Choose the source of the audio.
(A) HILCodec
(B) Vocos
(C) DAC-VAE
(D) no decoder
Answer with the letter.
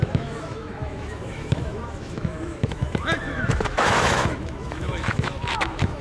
C